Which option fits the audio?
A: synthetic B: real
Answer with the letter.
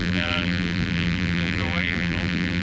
A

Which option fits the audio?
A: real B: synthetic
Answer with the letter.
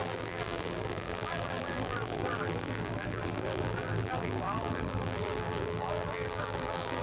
B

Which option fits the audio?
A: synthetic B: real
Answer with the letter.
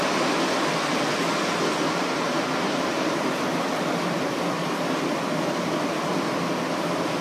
B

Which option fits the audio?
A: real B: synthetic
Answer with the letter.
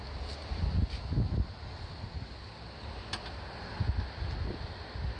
A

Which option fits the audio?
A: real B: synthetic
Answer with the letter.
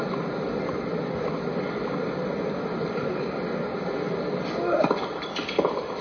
A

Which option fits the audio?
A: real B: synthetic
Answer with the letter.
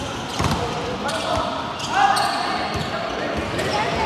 A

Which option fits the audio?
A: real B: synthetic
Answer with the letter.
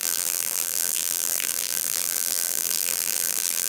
B